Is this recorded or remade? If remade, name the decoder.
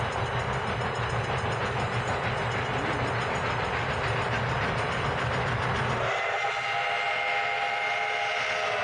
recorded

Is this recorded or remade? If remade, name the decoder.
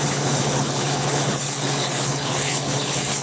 remade, codec, HILCodec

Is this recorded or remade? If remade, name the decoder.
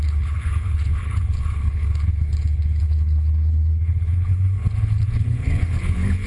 remade, codec, HILCodec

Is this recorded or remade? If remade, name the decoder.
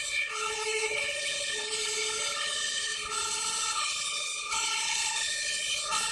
remade, codec, HILCodec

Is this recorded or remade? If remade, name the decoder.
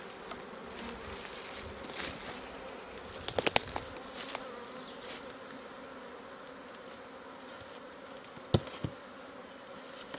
recorded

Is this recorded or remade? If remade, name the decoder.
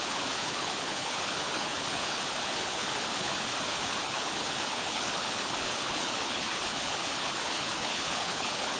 remade, codec, HILCodec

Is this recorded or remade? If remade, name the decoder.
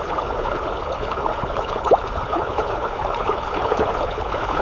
remade, codec, HILCodec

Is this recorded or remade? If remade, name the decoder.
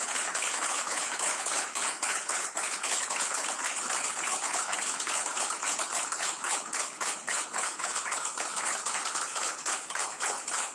remade, codec, HILCodec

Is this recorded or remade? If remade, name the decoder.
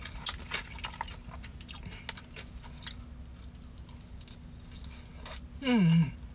recorded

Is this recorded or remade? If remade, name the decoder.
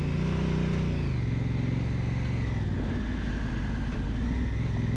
recorded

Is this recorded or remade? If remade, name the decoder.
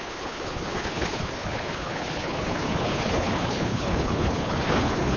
remade, codec, HILCodec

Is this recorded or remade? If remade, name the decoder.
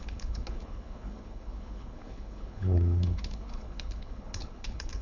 remade, codec, HILCodec